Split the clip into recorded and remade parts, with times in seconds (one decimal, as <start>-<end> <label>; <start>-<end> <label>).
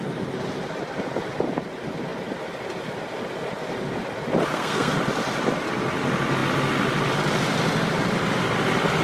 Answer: 0.0-4.5 recorded; 4.5-5.0 remade; 5.0-9.0 recorded